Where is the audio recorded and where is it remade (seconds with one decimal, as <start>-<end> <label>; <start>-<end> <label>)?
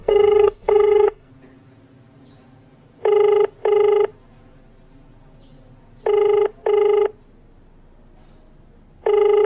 0.0-1.3 remade; 1.3-9.4 recorded